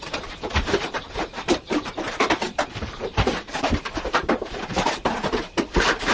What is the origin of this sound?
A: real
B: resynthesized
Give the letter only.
B